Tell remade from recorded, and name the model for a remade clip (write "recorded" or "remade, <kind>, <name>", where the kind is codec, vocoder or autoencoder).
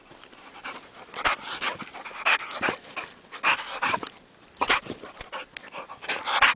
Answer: recorded